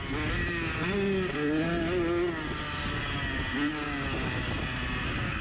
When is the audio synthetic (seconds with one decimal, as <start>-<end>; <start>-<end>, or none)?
none